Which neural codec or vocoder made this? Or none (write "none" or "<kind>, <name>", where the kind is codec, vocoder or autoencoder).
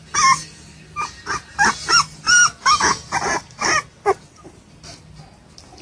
none